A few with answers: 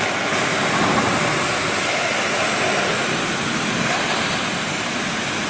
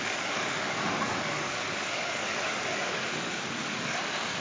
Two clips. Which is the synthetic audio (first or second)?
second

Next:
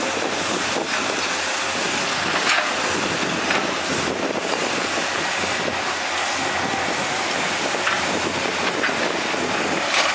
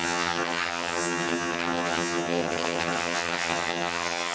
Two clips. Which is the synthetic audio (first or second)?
second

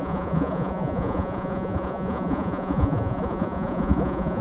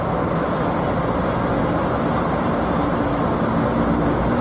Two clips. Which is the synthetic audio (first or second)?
first